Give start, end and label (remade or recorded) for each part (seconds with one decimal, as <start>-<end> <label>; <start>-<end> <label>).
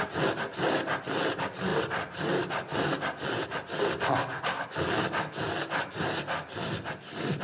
0.0-7.4 recorded